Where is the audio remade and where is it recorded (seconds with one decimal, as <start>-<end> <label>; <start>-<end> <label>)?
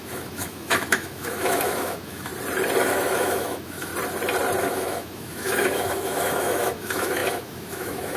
0.0-2.3 remade; 2.3-2.8 recorded; 2.8-3.9 remade; 3.9-4.6 recorded; 4.6-8.2 remade